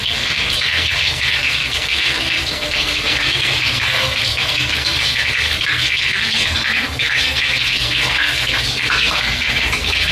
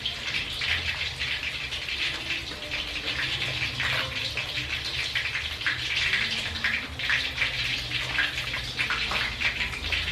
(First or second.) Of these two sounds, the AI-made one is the first